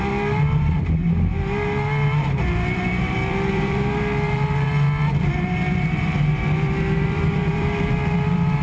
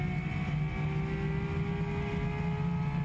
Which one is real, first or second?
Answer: second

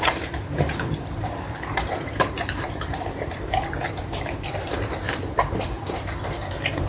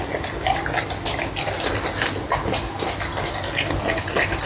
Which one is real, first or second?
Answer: second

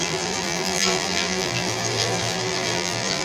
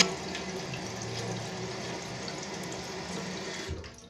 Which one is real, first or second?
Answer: second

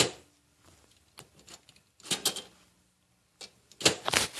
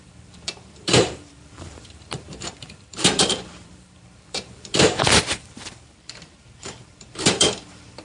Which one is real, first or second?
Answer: first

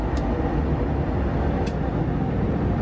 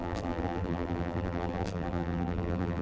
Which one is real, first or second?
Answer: first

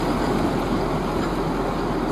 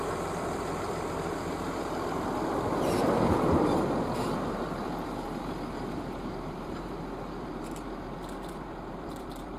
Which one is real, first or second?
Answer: first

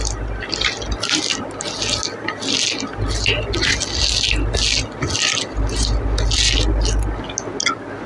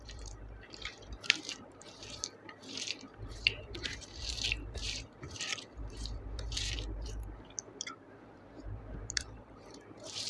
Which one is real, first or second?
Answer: first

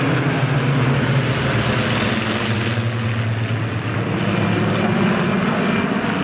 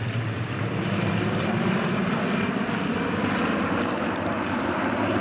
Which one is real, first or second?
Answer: first